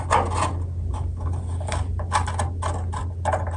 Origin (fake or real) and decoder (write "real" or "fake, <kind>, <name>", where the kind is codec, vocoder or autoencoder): real